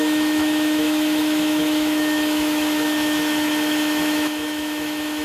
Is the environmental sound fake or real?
fake